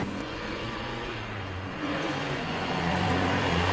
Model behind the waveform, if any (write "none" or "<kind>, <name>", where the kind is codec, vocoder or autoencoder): vocoder, Vocos